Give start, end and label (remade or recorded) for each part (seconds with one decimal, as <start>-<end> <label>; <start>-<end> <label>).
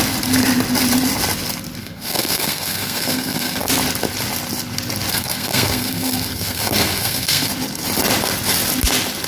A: 0.0-1.8 recorded; 1.8-3.7 remade; 3.7-5.1 recorded; 5.1-7.5 remade; 7.5-9.3 recorded